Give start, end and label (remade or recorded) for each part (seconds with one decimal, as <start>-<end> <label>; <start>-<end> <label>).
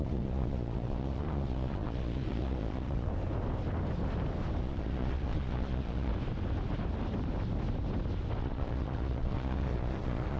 0.0-3.1 remade; 3.1-4.6 recorded; 4.6-6.1 remade; 6.1-8.4 recorded; 8.4-10.4 remade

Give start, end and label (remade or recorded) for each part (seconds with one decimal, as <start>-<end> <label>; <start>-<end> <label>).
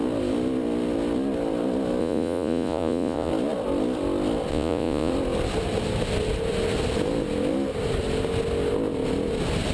0.0-2.0 recorded; 2.0-3.3 remade; 3.3-4.5 recorded; 4.5-5.1 remade; 5.1-9.7 recorded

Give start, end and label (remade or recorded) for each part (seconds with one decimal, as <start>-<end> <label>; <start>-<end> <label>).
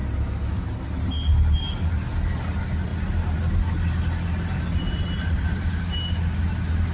0.0-6.9 recorded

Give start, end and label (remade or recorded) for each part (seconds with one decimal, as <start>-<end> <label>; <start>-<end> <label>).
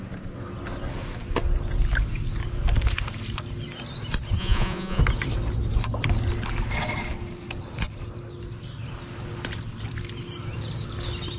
0.0-4.4 recorded; 4.4-5.0 remade; 5.0-11.4 recorded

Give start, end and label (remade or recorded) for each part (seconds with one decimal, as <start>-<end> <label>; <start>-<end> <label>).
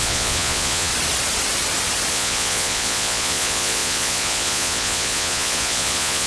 0.0-0.9 remade; 0.9-2.1 recorded; 2.1-6.3 remade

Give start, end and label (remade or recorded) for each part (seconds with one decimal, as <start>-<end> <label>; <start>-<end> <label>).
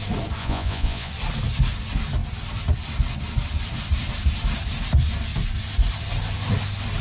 0.0-0.4 recorded; 0.4-1.1 remade; 1.1-7.0 recorded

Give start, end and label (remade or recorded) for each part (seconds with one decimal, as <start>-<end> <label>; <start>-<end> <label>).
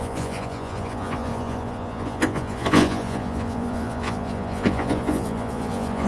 0.0-6.1 remade